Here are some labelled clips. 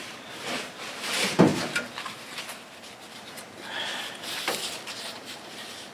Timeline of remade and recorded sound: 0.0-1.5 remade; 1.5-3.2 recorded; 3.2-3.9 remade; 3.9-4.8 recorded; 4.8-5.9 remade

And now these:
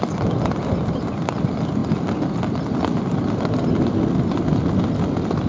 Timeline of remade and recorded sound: 0.0-5.5 recorded

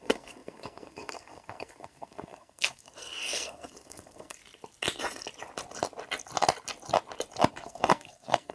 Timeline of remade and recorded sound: 0.0-4.4 remade; 4.4-7.5 recorded; 7.5-8.5 remade

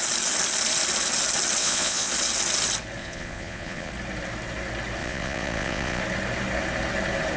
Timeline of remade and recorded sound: 0.0-1.6 recorded; 1.6-2.1 remade; 2.1-3.0 recorded; 3.0-3.9 remade; 3.9-5.0 recorded; 5.0-6.0 remade; 6.0-7.4 recorded

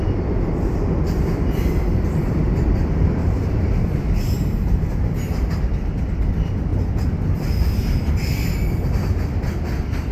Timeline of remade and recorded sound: 0.0-3.2 recorded; 3.2-5.5 remade; 5.5-10.1 recorded